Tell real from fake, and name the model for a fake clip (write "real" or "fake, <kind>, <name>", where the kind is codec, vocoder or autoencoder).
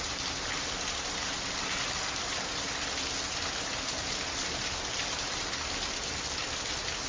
real